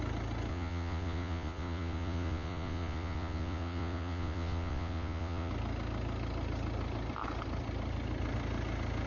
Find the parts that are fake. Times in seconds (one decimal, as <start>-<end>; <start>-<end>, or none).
0.5-5.5